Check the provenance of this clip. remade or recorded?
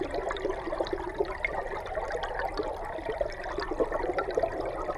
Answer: recorded